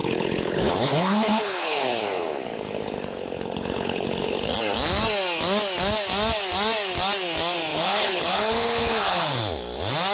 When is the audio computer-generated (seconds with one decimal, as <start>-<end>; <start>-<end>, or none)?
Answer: 0.0-4.5; 7.7-9.4